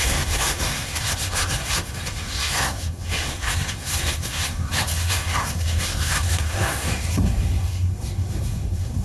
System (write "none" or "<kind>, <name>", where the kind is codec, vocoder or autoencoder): codec, SNAC